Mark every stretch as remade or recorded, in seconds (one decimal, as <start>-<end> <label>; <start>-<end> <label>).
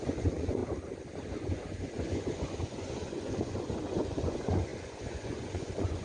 0.0-0.6 remade; 0.6-1.3 recorded; 1.3-6.0 remade